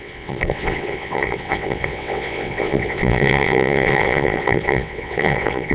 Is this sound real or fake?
fake